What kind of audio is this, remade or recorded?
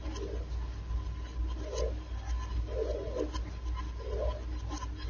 recorded